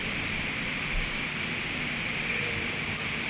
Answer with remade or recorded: remade